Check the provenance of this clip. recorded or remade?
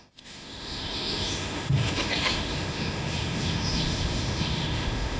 remade